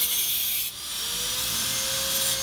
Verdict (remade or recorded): recorded